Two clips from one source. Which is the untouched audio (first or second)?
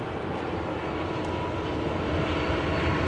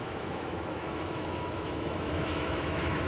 first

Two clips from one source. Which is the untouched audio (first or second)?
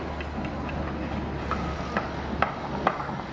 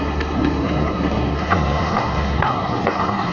first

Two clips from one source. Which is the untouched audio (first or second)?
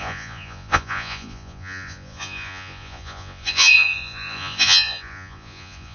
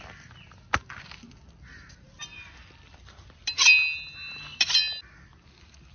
second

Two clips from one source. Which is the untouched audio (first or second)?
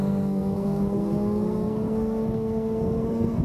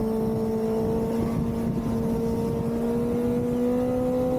second